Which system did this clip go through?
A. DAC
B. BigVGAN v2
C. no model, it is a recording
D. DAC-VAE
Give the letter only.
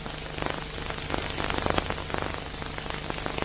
C